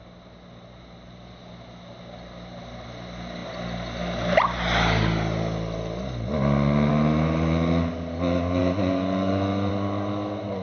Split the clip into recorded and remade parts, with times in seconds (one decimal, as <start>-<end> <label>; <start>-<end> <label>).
0.0-10.6 recorded